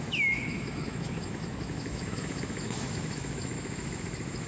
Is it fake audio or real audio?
fake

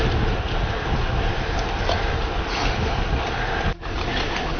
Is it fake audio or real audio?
real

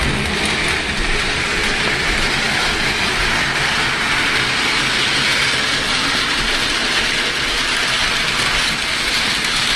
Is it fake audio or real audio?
real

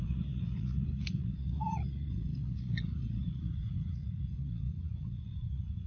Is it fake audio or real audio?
fake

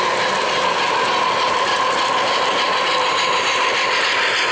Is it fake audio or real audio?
real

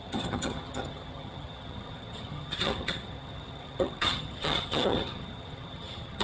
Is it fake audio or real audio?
fake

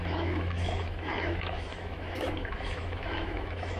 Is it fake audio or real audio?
fake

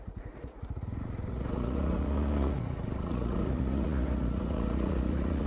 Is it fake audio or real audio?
fake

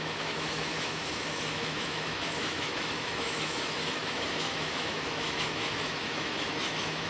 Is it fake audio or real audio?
fake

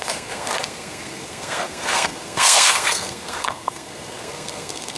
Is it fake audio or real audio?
fake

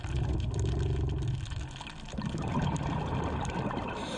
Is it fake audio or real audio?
real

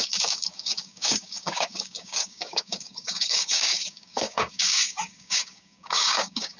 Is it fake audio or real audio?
fake